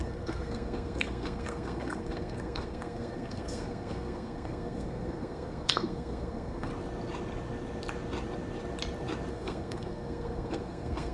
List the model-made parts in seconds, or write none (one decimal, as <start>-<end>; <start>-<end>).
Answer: 0.0-6.7; 9.3-11.1